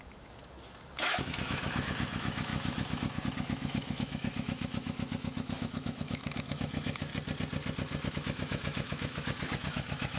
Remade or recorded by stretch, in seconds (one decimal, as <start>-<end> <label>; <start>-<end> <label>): 0.0-7.1 remade; 7.1-8.1 recorded; 8.1-10.2 remade